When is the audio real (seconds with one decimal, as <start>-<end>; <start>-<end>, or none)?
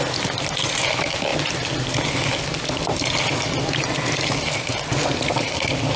0.0-6.0